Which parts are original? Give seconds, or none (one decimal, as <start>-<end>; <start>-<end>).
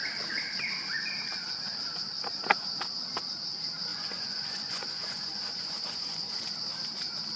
0.0-3.9; 6.5-7.4